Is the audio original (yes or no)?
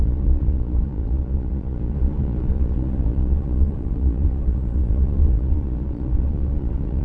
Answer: no